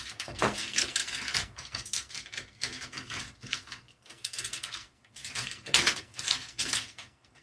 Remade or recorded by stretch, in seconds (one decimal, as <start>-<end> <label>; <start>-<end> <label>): 0.0-7.4 remade